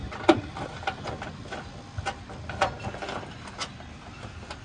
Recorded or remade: recorded